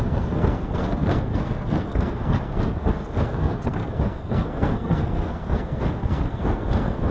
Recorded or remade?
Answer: remade